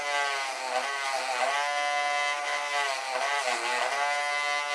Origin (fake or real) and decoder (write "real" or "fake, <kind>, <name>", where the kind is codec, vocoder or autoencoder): real